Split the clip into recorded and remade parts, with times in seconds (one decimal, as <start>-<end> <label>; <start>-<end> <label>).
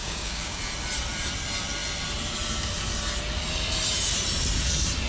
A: 0.0-0.6 remade; 0.6-5.1 recorded